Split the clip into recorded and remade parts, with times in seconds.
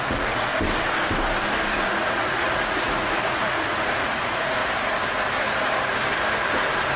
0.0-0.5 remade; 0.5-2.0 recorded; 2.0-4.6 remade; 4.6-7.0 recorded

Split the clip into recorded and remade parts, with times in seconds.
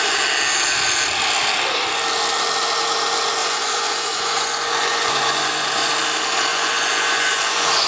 0.0-3.4 recorded; 3.4-5.9 remade; 5.9-6.5 recorded; 6.5-7.9 remade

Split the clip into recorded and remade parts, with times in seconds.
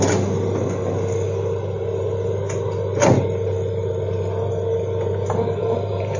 0.0-5.6 recorded; 5.6-6.2 remade